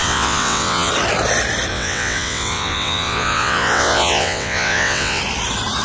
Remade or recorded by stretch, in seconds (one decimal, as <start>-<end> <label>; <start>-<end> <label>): 0.0-0.9 remade; 0.9-1.7 recorded; 1.7-5.2 remade; 5.2-5.8 recorded